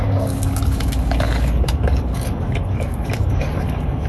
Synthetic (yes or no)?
yes